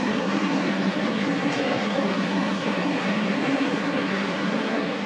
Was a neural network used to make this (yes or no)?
yes